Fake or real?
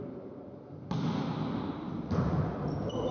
real